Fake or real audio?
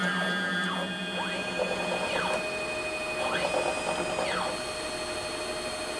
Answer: real